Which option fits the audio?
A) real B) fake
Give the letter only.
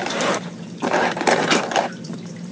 B